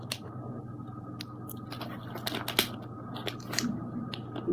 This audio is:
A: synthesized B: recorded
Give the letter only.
B